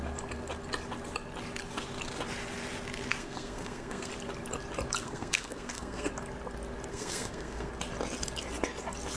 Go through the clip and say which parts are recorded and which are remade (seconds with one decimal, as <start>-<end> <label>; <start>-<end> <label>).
0.0-3.2 recorded; 3.2-4.1 remade; 4.1-5.0 recorded; 5.0-6.1 remade; 6.1-6.9 recorded; 6.9-7.7 remade; 7.7-9.2 recorded